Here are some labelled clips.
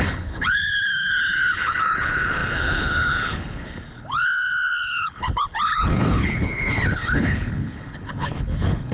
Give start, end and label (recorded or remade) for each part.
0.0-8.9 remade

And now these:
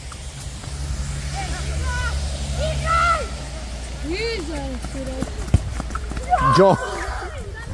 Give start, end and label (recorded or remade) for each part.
0.0-7.7 recorded

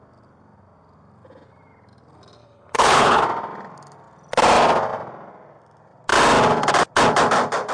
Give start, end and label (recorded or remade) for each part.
0.0-2.4 recorded; 2.4-3.2 remade; 3.2-7.7 recorded

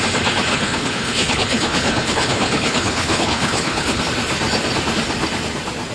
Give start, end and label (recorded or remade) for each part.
0.0-0.5 recorded; 0.5-4.0 remade; 4.0-5.9 recorded

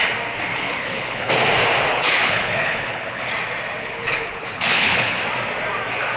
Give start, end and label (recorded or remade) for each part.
0.0-0.5 recorded; 0.5-1.3 remade; 1.3-1.9 recorded; 1.9-3.3 remade; 3.3-3.8 recorded; 3.8-5.2 remade; 5.2-6.2 recorded